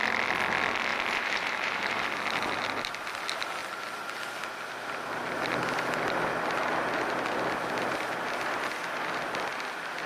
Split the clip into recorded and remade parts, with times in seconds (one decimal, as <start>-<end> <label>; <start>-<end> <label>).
0.0-0.9 recorded; 0.9-2.0 remade; 2.0-10.1 recorded